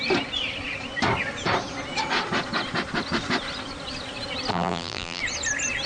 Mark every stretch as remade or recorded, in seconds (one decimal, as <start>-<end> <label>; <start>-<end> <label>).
0.0-4.5 recorded; 4.5-5.2 remade; 5.2-5.9 recorded